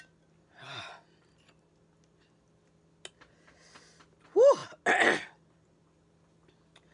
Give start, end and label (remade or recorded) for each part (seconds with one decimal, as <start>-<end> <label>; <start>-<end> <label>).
0.0-6.9 recorded